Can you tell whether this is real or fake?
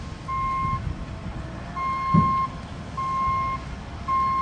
real